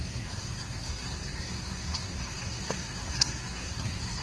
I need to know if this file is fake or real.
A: fake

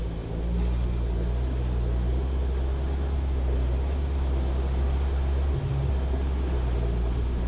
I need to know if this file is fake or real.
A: real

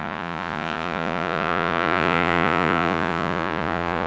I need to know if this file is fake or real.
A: fake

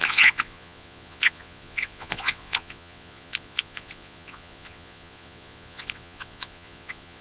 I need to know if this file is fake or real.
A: fake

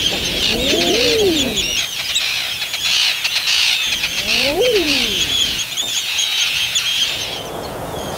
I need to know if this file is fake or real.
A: fake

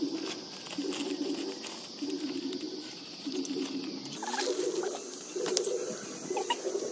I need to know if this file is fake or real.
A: real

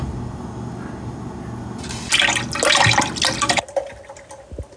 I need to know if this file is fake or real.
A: real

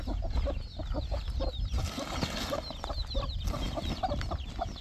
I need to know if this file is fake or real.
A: real